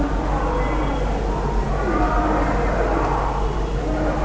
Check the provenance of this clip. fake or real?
real